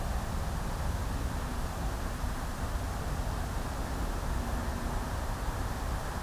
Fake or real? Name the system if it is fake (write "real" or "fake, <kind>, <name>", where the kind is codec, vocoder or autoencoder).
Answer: real